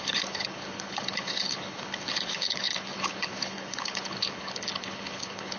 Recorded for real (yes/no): no